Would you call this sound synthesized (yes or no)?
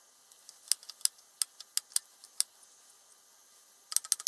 no